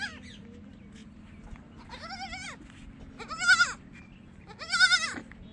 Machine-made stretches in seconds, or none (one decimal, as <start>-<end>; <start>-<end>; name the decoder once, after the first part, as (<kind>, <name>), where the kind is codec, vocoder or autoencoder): none

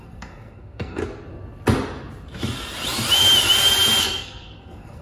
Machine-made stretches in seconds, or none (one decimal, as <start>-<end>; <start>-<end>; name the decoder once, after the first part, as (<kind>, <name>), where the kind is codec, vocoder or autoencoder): 0.0-1.0 (codec, SNAC); 4.0-5.0

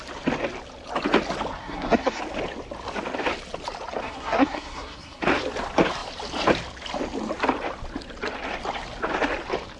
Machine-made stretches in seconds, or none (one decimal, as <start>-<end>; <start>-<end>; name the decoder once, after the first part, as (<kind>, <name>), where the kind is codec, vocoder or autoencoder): 1.6-2.2 (codec, SNAC); 4.0-5.2

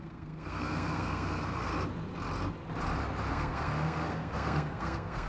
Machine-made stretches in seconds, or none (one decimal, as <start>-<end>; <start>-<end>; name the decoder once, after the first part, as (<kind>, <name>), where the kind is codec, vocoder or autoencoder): 0.0-1.7 (codec, SNAC); 3.3-5.3

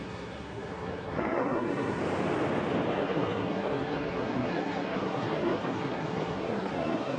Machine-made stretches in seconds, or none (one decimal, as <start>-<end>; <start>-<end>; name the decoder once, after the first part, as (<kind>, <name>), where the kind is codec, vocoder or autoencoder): 0.0-2.0 (codec, SNAC); 2.9-7.2

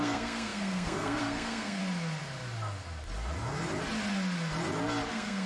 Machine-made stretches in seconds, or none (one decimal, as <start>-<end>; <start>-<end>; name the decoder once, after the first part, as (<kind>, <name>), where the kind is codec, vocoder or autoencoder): 0.0-1.8 (codec, SNAC); 5.1-5.5

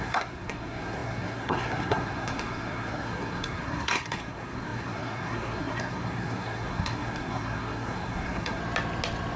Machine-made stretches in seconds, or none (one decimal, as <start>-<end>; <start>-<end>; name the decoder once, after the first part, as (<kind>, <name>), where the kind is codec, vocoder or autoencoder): 0.0-8.6 (codec, SNAC)